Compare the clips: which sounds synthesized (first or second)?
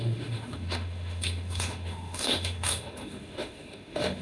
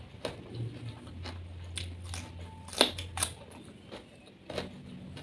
first